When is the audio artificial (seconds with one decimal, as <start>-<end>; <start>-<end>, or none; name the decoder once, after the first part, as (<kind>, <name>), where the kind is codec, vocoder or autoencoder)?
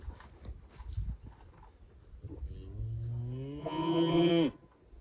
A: 3.6-4.3 (vocoder, Vocos)